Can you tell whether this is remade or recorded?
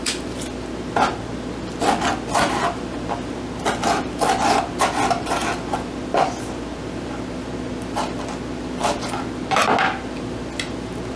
recorded